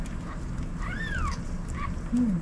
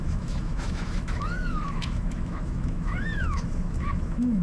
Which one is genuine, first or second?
first